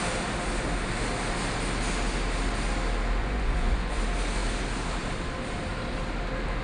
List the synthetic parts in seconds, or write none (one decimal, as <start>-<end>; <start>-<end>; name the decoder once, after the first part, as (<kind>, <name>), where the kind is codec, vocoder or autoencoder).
3.2-4.0 (vocoder, Vocos)